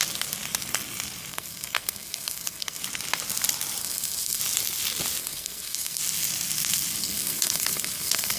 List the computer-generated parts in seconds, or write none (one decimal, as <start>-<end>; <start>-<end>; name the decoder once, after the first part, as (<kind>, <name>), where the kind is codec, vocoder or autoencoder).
1.3-2.8 (codec, SNAC); 3.8-4.4; 5.2-6.0; 7.0-8.4